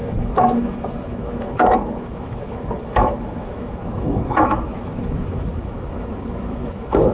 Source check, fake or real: fake